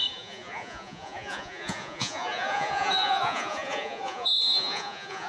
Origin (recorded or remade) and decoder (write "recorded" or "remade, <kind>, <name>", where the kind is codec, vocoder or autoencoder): remade, vocoder, Vocos